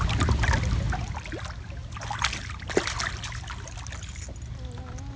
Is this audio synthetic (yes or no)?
no